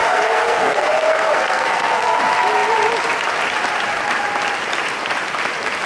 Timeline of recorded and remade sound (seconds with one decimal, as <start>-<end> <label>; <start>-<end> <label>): 0.0-2.2 remade; 2.2-5.9 recorded